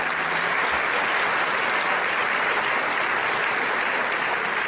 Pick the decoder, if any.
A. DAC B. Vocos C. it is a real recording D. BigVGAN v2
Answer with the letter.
C